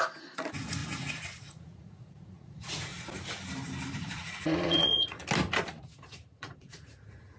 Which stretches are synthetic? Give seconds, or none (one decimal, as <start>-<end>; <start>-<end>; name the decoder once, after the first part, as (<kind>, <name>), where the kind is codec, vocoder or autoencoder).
0.0-2.9 (vocoder, Vocos); 3.9-5.2; 5.8-7.4